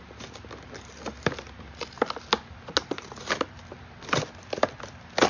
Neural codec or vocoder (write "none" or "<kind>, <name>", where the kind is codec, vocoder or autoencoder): none